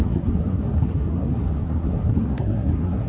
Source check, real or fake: fake